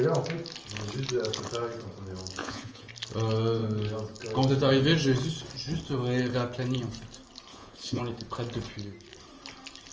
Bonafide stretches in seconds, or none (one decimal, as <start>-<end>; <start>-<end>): 0.0-2.4; 2.9-7.5; 8.0-9.9